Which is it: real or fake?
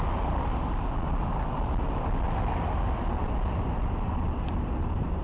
real